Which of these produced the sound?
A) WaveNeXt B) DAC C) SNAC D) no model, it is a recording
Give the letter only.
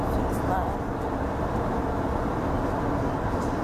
D